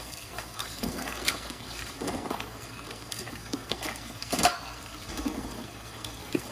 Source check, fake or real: fake